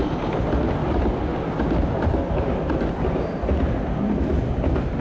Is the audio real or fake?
real